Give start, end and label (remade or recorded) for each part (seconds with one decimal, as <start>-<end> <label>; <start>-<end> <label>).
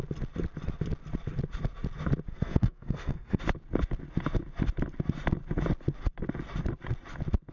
0.0-2.3 recorded; 2.3-3.4 remade; 3.4-7.5 recorded